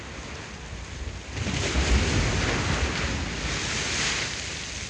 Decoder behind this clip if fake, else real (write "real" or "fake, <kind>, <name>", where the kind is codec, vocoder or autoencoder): real